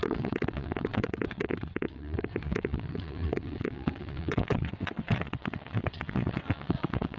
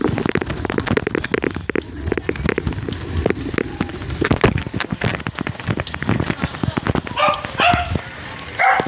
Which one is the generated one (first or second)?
first